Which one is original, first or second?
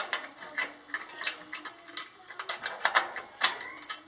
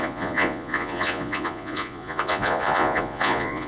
first